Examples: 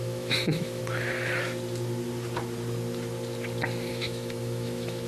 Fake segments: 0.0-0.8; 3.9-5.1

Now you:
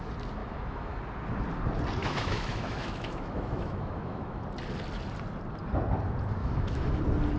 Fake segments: 0.4-1.0; 2.0-4.4; 6.4-7.0

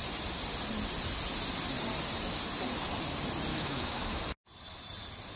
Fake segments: 3.5-4.2

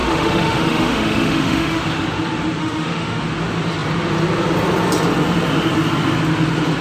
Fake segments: 0.0-1.8; 2.6-3.2

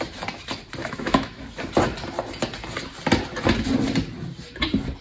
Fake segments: 0.8-1.4

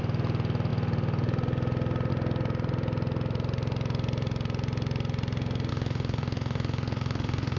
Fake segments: 5.7-7.6

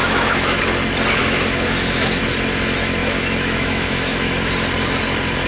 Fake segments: 0.0-0.6; 1.2-2.2; 3.0-4.5